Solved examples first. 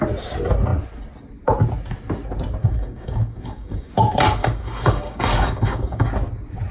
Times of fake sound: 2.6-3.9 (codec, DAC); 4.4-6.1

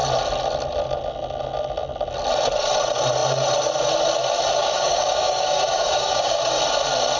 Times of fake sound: 4.6-6.6 (codec, DAC)

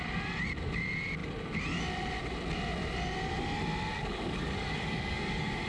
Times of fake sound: 3.9-5.7 (codec, DAC)

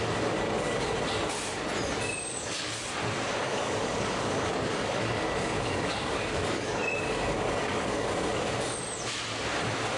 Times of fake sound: 0.0-0.9 (codec, DAC); 2.3-2.8; 3.4-8.3